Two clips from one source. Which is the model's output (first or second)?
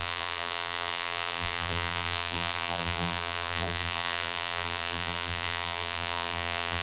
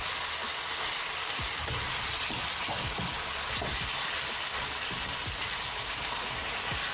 first